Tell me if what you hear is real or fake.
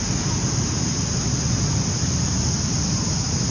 real